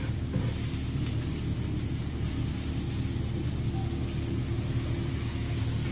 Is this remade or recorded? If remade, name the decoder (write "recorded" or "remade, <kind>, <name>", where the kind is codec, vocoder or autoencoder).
recorded